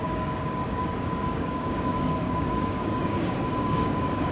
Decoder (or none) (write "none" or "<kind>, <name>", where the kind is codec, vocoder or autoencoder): codec, DAC